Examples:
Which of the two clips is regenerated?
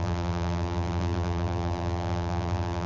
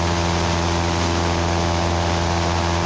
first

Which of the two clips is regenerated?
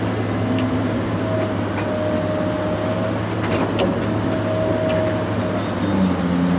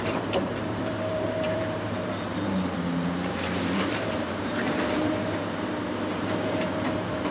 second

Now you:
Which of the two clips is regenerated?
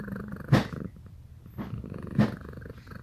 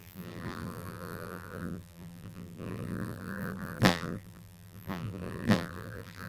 second